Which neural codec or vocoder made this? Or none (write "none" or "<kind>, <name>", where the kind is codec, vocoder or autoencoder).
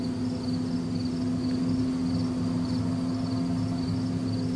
none